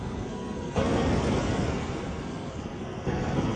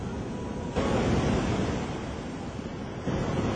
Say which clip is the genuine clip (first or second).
second